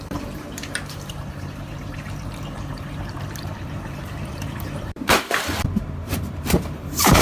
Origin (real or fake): fake